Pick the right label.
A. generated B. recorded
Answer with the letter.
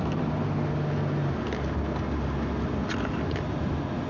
B